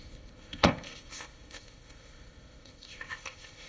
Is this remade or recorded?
remade